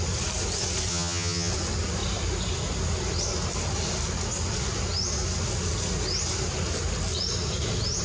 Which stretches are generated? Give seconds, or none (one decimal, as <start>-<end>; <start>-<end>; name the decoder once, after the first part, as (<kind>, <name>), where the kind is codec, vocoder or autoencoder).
0.9-1.5 (vocoder, HiFi-GAN)